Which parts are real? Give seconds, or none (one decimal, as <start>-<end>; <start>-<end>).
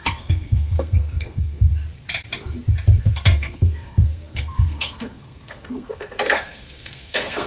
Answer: 1.7-3.0